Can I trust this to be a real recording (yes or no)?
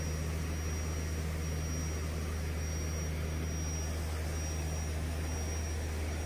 yes